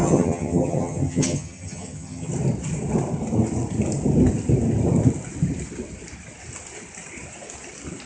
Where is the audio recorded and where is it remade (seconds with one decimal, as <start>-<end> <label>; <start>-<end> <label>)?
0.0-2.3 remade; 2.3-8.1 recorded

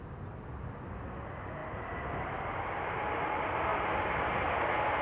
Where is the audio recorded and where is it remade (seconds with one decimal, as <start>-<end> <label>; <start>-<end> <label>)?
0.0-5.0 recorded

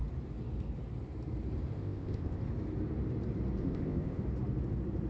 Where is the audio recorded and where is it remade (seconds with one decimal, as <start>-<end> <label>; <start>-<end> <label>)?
0.0-1.8 recorded; 1.8-2.4 remade; 2.4-3.6 recorded; 3.6-4.2 remade; 4.2-5.1 recorded

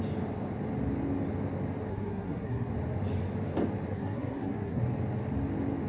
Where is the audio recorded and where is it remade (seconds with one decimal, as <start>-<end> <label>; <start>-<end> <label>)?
0.0-1.9 recorded; 1.9-2.7 remade; 2.7-3.9 recorded; 3.9-4.8 remade; 4.8-5.9 recorded

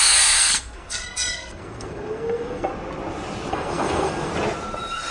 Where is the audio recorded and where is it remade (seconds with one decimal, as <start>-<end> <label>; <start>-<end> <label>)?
0.0-2.7 remade; 2.7-3.5 recorded; 3.5-4.3 remade; 4.3-5.1 recorded